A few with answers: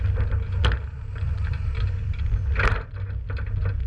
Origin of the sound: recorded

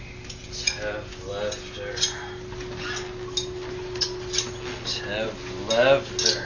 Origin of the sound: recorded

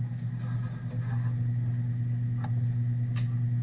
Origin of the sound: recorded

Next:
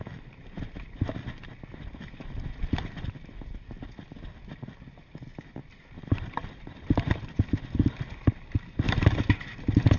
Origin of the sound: recorded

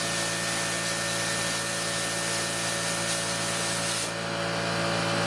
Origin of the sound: recorded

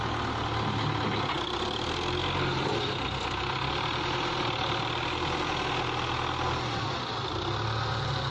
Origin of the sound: recorded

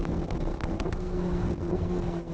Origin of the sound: remade